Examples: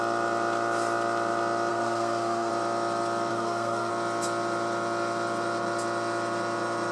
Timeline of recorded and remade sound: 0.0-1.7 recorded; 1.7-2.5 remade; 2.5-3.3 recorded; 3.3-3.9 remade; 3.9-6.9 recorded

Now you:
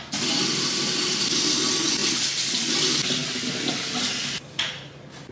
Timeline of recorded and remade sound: 0.0-5.3 recorded